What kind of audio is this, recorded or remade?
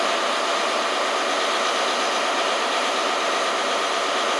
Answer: recorded